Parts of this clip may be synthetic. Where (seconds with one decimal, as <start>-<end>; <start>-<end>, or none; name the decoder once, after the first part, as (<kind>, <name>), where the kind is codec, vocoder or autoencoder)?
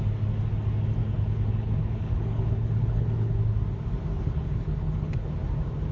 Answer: 1.0-3.4 (codec, HILCodec); 4.1-5.3